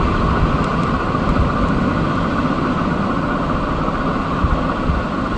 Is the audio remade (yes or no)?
yes